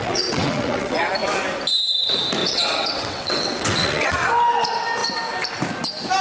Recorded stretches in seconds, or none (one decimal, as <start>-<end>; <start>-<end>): 1.1-2.4; 4.3-6.2

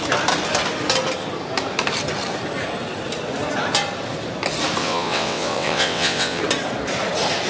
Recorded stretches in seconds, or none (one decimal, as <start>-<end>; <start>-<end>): 0.0-4.8; 6.4-7.5

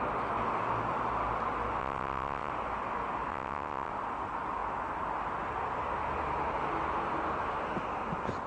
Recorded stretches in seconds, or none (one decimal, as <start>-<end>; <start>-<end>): 0.0-1.8; 2.5-3.3; 3.9-8.5

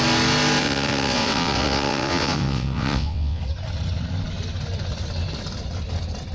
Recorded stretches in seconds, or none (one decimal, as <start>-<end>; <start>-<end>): 0.0-0.6; 3.4-6.3